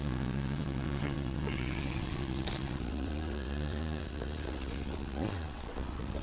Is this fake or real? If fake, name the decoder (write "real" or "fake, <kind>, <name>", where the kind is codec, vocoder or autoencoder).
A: fake, vocoder, WaveNeXt